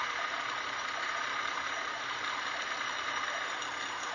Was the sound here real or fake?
real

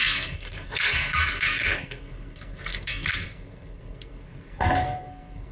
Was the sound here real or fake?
fake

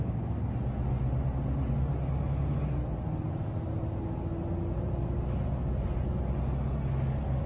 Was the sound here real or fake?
real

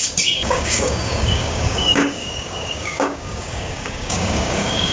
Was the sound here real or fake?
fake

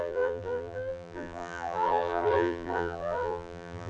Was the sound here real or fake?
fake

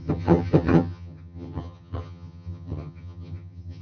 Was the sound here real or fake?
fake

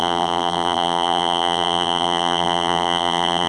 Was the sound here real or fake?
fake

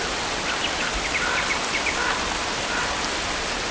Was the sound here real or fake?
real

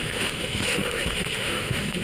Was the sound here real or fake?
fake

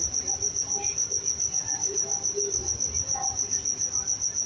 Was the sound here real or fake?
real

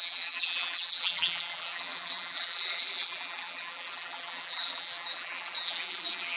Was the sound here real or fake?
fake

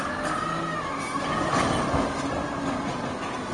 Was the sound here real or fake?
real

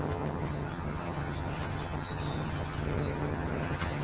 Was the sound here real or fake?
fake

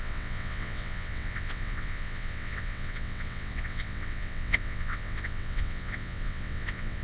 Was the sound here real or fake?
fake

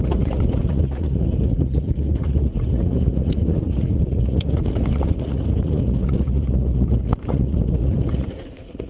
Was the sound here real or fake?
fake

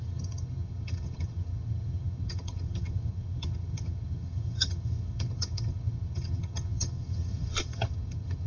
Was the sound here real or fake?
fake